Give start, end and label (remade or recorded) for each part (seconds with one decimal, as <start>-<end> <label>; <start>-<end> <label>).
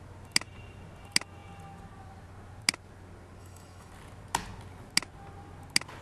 0.0-3.4 recorded; 3.4-3.9 remade; 3.9-6.0 recorded